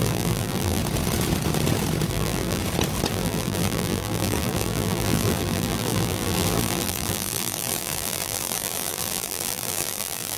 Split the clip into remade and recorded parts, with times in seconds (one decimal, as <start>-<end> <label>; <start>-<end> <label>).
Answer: 0.0-0.8 remade; 0.8-2.1 recorded; 2.1-2.6 remade; 2.6-3.1 recorded; 3.1-10.4 remade